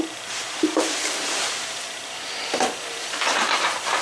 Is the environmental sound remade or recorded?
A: remade